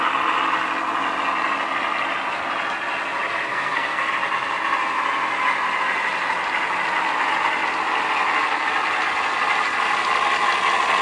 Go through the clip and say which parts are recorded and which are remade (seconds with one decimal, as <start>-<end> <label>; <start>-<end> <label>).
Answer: 0.0-3.5 recorded; 3.5-4.1 remade; 4.1-11.0 recorded

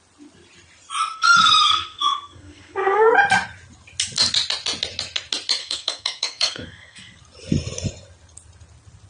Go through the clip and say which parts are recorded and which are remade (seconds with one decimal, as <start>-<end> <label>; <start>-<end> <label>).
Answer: 0.0-1.0 recorded; 1.0-3.1 remade; 3.1-5.6 recorded; 5.6-7.2 remade; 7.2-9.1 recorded

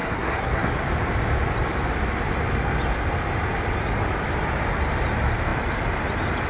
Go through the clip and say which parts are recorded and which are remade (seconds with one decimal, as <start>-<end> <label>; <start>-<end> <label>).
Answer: 0.0-0.7 remade; 0.7-6.5 recorded

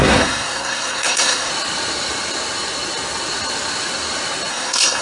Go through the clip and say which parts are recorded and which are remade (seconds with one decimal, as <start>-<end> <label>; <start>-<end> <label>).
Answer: 0.0-1.5 remade; 1.5-4.5 recorded; 4.5-5.0 remade

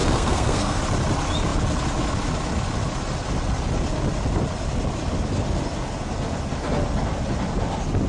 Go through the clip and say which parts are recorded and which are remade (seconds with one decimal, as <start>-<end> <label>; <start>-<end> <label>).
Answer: 0.0-0.8 remade; 0.8-8.1 recorded

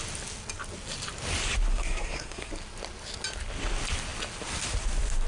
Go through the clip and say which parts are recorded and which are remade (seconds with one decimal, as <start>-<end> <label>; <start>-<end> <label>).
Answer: 0.0-1.7 recorded; 1.7-2.5 remade; 2.5-5.3 recorded

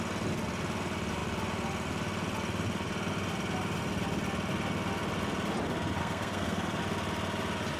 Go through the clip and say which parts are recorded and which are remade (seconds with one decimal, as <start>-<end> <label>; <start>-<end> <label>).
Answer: 0.0-6.0 recorded; 6.0-6.8 remade; 6.8-7.8 recorded

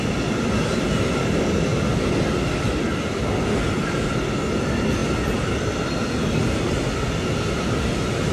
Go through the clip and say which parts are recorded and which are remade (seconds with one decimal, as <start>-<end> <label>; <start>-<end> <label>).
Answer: 0.0-8.3 recorded